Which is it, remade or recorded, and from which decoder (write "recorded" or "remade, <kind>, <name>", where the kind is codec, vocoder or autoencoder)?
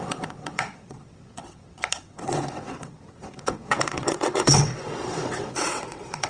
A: remade, vocoder, WaveNeXt